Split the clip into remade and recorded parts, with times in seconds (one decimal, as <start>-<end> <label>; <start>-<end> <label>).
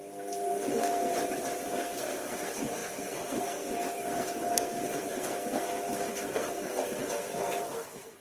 0.0-1.1 remade; 1.1-1.7 recorded; 1.7-8.2 remade